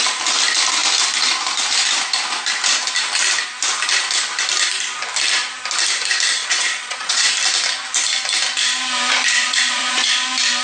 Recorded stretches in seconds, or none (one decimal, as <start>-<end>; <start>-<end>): 0.0-6.4; 7.3-9.4; 10.1-10.6